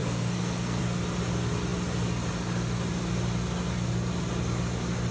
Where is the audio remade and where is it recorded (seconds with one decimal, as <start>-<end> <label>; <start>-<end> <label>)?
0.0-0.8 remade; 0.8-5.1 recorded